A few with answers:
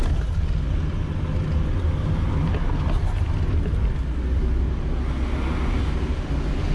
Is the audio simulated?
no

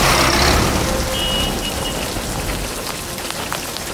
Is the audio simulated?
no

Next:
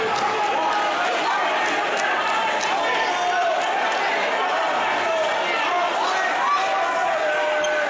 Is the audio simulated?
no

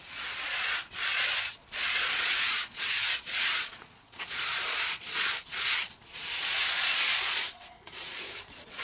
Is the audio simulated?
yes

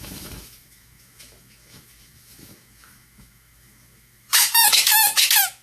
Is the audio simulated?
yes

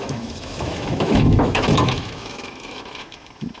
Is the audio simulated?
yes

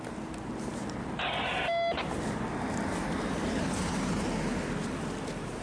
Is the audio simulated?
no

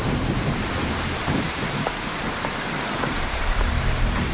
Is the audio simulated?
yes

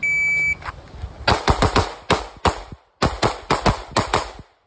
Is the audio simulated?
no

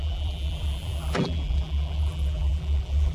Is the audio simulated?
yes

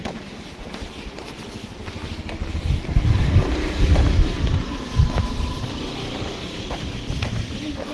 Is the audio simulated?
no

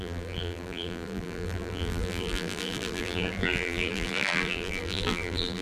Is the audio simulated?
yes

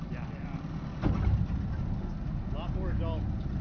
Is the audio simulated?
no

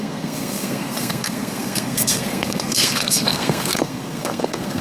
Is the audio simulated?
yes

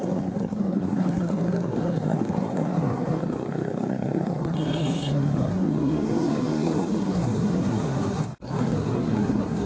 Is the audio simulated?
yes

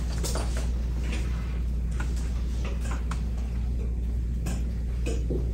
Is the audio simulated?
no